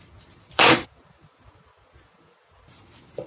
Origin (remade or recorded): remade